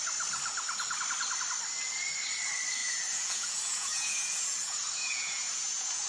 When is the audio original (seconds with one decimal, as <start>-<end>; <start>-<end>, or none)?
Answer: 0.0-2.8